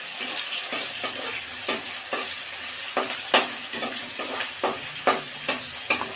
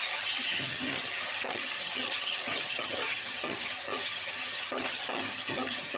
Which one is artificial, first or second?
second